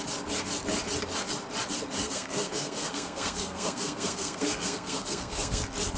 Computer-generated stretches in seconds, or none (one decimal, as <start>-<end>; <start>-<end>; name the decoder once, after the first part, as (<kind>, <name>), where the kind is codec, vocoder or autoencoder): 2.0-5.6 (codec, SNAC)